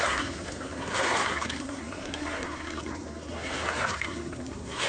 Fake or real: fake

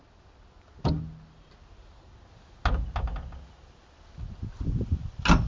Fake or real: real